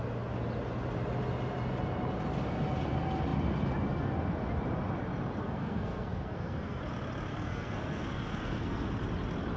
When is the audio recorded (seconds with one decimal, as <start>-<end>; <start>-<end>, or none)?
0.0-5.4; 6.8-7.3; 8.9-9.6